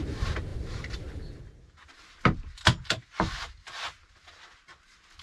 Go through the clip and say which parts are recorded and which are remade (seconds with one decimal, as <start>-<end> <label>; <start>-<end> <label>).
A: 0.0-0.5 recorded; 0.5-1.4 remade; 1.4-5.2 recorded